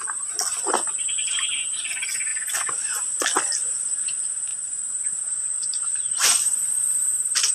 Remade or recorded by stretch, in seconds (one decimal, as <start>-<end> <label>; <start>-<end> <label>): 0.0-2.3 recorded; 2.3-4.0 remade; 4.0-4.5 recorded; 4.5-5.2 remade; 5.2-7.5 recorded